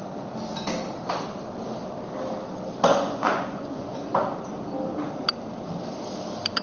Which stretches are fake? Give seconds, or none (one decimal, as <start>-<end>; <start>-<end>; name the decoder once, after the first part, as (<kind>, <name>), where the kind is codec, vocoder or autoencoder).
2.9-4.1 (vocoder, Vocos)